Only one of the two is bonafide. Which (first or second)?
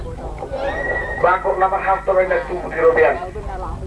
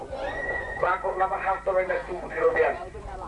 first